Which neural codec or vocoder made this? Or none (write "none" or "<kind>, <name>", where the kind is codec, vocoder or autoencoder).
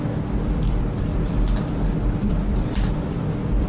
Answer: vocoder, BigVGAN v2